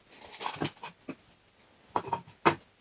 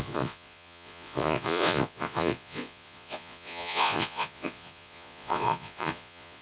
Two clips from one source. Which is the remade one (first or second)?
second